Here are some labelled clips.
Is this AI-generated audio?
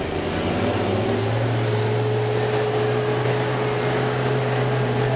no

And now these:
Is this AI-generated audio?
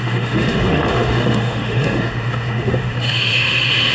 yes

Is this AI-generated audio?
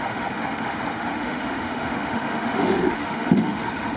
yes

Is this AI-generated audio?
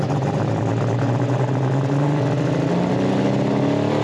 no